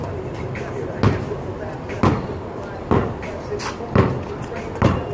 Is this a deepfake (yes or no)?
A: no